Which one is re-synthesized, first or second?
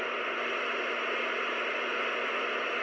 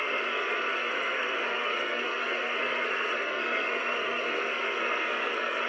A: second